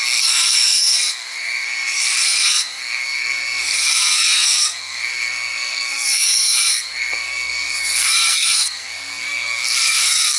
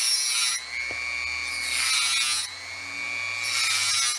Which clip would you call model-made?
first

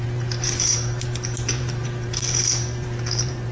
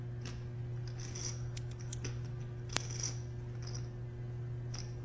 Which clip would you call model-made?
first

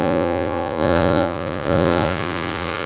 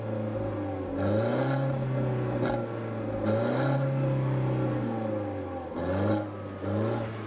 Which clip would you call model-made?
first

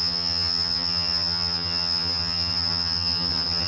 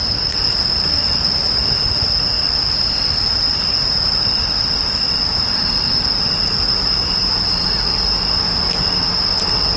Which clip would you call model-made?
first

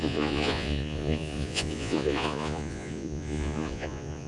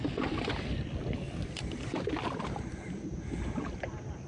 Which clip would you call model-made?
first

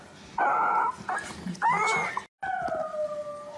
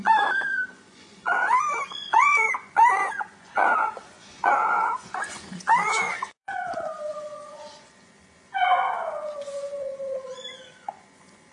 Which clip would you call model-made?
second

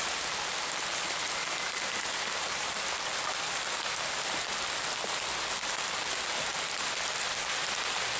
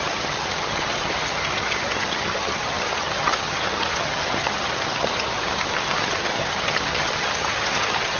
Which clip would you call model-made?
second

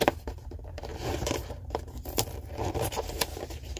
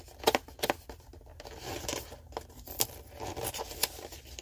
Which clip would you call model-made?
first